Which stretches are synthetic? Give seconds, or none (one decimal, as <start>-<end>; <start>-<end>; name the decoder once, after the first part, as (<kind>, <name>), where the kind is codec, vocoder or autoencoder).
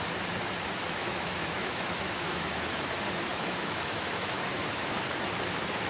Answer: 1.0-2.9 (autoencoder, DAC-VAE); 3.3-5.0